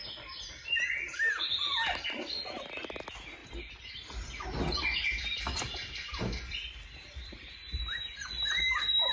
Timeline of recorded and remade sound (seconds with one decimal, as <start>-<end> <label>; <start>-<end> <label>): 0.0-2.0 recorded; 2.0-9.1 remade

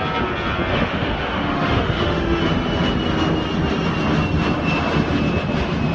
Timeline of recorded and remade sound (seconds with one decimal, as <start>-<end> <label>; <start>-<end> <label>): 0.0-0.7 recorded; 0.7-2.4 remade; 2.4-5.9 recorded

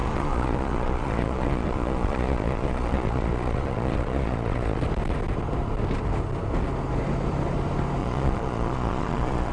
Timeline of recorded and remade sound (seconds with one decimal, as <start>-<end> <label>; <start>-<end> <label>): 0.0-4.8 remade; 4.8-8.0 recorded; 8.0-9.5 remade

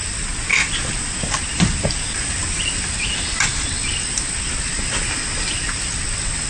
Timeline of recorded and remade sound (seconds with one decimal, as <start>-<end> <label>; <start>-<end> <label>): 0.0-6.5 recorded

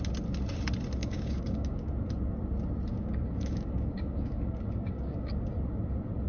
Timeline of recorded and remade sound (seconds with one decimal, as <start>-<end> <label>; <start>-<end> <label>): 0.0-1.0 recorded; 1.0-1.9 remade; 1.9-2.9 recorded; 2.9-5.3 remade; 5.3-6.3 recorded